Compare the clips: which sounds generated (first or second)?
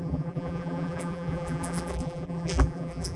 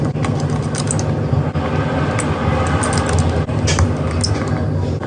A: first